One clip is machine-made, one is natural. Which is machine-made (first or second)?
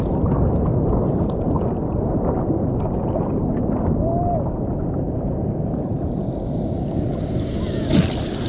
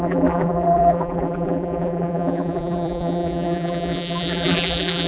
second